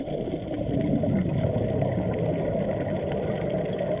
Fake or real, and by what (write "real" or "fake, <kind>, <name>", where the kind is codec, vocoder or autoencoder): real